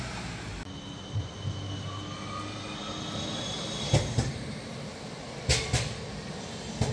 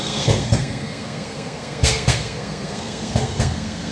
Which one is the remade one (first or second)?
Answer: second